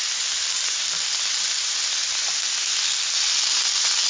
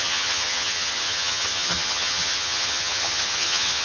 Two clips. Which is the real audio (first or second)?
first